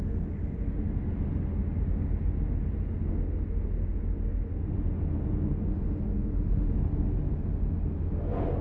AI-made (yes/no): no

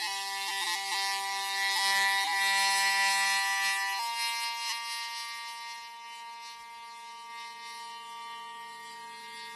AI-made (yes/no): no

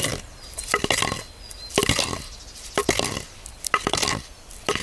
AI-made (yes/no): no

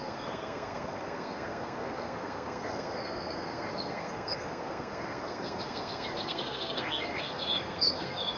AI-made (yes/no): yes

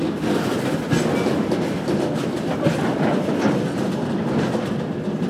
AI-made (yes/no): no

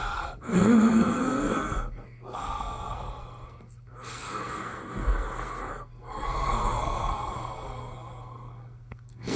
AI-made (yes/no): yes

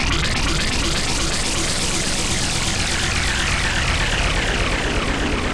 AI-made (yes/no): no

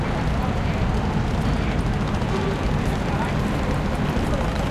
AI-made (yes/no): no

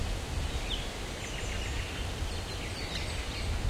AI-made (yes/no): no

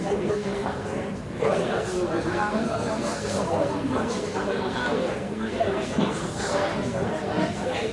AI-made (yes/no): yes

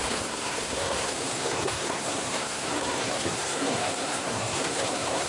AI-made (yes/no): yes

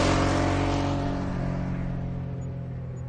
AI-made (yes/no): no